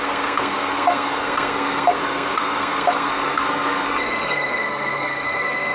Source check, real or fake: fake